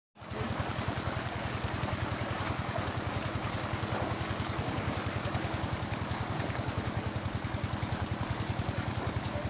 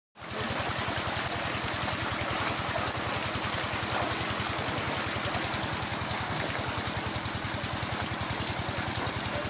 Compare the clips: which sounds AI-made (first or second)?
first